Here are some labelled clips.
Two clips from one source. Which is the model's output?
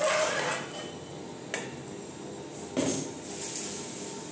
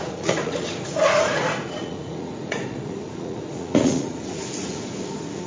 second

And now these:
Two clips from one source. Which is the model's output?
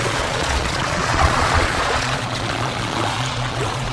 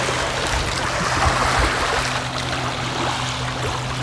first